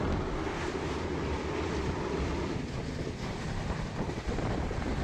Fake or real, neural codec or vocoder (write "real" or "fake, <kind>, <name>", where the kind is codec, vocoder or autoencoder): real